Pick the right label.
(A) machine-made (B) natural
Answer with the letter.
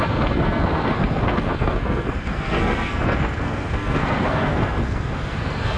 A